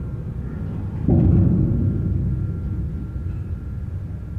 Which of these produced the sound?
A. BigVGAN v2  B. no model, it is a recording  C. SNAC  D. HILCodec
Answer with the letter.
B